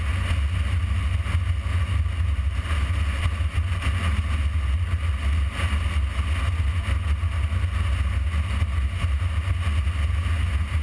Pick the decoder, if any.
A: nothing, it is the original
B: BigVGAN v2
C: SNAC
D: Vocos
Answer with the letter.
A